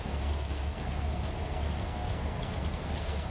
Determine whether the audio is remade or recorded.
remade